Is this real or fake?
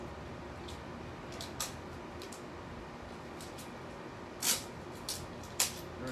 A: real